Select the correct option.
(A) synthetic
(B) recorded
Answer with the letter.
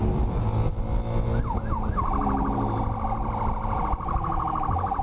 B